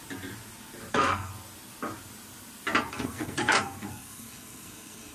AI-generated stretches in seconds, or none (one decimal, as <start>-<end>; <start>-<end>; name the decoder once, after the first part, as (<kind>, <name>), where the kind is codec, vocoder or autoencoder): 0.9-1.3 (codec, SNAC); 2.9-5.1